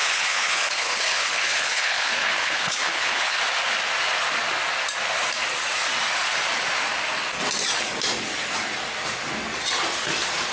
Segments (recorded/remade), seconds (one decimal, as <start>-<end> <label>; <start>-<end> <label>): 0.0-3.4 remade; 3.4-10.5 recorded